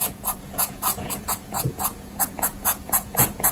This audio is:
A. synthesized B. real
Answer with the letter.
A